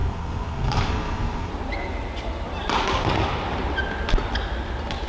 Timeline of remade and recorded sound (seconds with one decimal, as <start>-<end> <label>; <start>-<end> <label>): 0.0-1.5 remade; 1.5-5.1 recorded